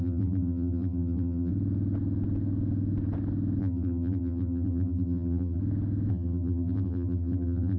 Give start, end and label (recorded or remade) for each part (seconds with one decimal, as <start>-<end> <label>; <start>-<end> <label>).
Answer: 0.0-1.5 remade; 1.5-3.6 recorded; 3.6-5.6 remade; 5.6-6.1 recorded; 6.1-7.8 remade